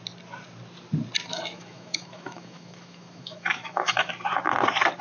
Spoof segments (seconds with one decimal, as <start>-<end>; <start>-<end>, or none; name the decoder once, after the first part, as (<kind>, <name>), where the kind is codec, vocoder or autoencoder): 1.3-4.1 (autoencoder, DAC-VAE)